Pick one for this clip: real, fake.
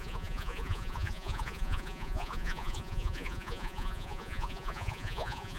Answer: fake